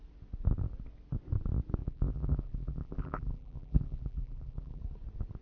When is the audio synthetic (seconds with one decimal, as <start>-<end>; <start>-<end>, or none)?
1.8-4.8